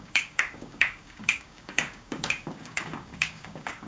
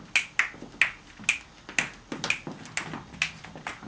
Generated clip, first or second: first